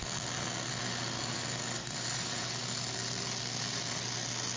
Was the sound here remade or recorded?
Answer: recorded